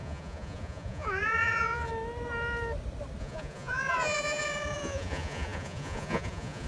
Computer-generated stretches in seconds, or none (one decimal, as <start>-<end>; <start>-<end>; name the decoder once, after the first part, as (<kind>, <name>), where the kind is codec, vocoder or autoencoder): 0.0-1.9 (vocoder, Vocos); 3.2-6.7